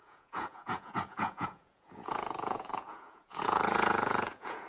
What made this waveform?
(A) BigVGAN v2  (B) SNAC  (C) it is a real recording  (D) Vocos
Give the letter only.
D